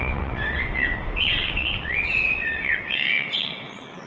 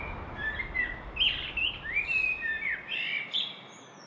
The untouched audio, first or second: second